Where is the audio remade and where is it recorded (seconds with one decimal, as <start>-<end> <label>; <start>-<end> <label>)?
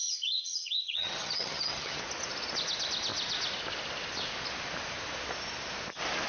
0.0-2.0 remade; 2.0-6.3 recorded